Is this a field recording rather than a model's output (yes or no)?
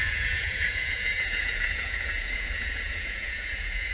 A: no